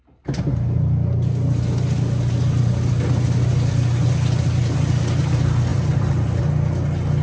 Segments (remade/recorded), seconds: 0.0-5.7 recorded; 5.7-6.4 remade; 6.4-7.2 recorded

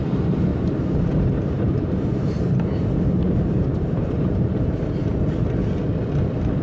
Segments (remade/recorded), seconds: 0.0-5.0 remade; 5.0-6.6 recorded

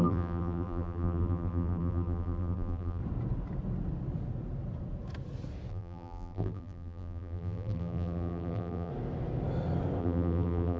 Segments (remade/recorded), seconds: 0.0-3.0 remade; 3.0-5.7 recorded; 5.7-8.9 remade; 8.9-10.0 recorded; 10.0-10.8 remade

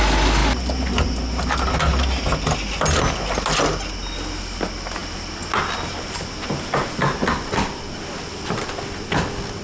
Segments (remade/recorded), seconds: 0.0-9.6 recorded

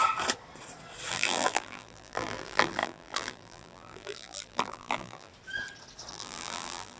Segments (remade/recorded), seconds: 0.0-1.1 recorded; 1.1-5.3 remade; 5.3-6.1 recorded; 6.1-7.0 remade

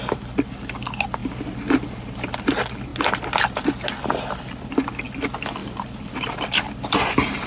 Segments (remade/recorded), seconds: 0.0-7.5 recorded

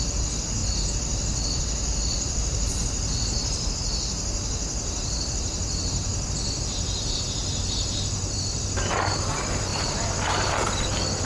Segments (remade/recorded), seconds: 0.0-0.6 recorded; 0.6-3.7 remade; 3.7-9.7 recorded; 9.7-10.5 remade; 10.5-11.3 recorded

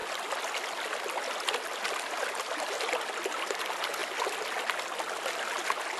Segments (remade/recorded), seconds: 0.0-6.0 recorded